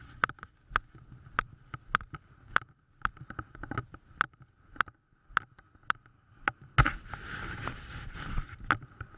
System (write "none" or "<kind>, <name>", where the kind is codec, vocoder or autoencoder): none